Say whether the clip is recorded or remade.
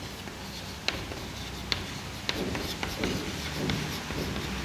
recorded